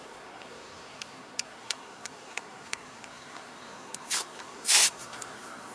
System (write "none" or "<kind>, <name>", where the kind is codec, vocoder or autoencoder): codec, SNAC